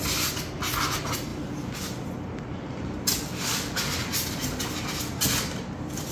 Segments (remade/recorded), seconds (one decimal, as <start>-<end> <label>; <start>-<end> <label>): 0.0-6.1 recorded

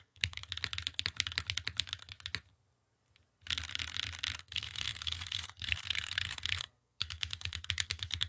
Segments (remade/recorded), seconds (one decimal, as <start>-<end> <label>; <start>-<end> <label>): 0.0-0.4 remade; 0.4-4.4 recorded; 4.4-8.3 remade